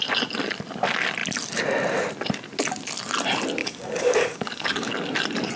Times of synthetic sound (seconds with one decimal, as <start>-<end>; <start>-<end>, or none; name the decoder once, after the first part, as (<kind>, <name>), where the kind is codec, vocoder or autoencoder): 3.6-4.9 (codec, DAC)